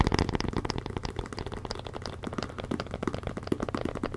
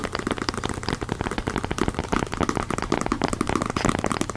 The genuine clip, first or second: first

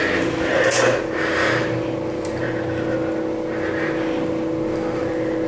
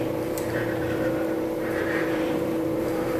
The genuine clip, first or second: first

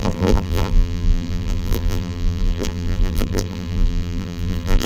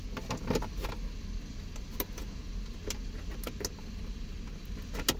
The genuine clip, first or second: second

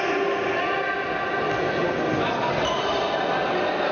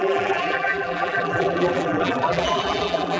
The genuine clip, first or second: first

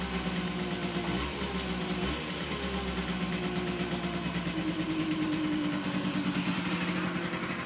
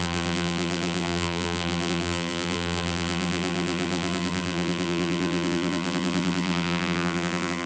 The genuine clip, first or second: first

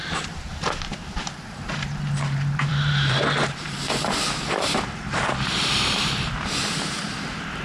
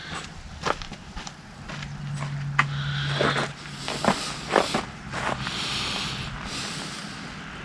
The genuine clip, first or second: second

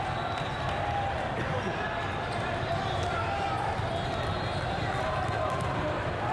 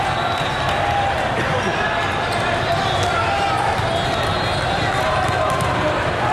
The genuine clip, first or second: second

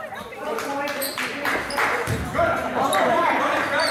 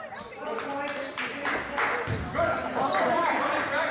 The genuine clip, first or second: second